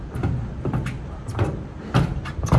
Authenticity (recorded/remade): recorded